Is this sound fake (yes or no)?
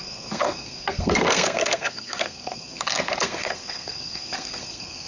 yes